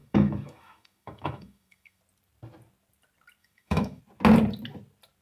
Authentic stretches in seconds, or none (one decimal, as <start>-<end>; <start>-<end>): 2.0-3.4; 4.0-5.2